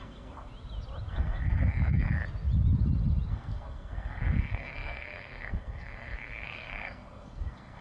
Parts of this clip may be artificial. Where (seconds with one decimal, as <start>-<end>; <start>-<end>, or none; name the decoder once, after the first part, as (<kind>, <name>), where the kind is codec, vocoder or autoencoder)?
0.0-0.5 (codec, SNAC); 1.1-2.2; 3.3-7.8